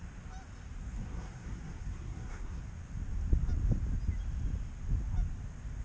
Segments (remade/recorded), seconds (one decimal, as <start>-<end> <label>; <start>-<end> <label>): 0.0-0.8 recorded; 0.8-2.6 remade; 2.6-5.8 recorded